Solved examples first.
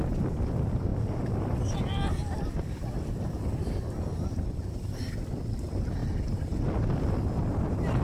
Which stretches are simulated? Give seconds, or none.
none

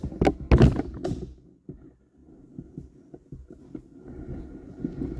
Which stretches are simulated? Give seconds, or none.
none

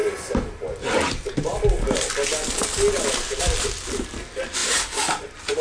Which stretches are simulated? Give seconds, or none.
none